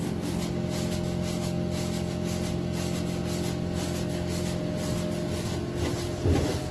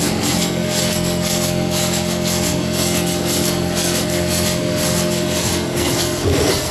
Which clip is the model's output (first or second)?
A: second